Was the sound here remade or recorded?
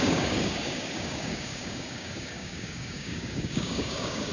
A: remade